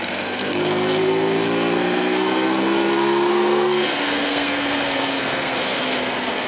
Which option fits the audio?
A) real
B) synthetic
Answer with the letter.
B